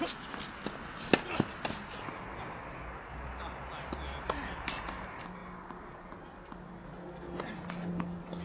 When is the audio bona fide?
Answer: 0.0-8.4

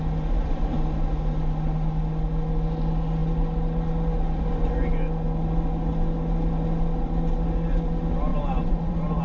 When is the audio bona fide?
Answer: 0.0-8.3

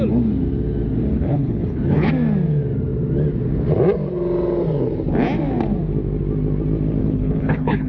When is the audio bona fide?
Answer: 0.0-1.1; 2.1-7.0

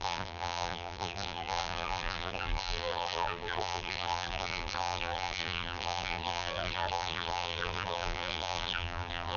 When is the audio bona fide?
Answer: none

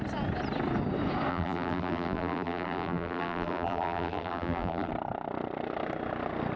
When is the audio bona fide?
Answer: 0.0-1.3; 4.9-6.6

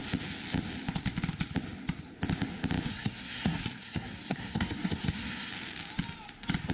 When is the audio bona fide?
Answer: 0.0-2.9; 5.5-6.7